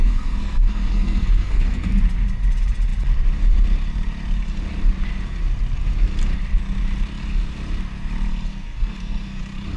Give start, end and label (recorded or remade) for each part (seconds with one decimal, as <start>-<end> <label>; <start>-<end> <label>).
0.0-2.0 remade; 2.0-8.5 recorded; 8.5-9.4 remade; 9.4-9.8 recorded